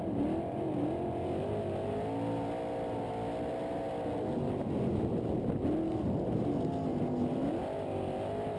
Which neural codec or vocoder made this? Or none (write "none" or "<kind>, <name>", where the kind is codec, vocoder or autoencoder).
none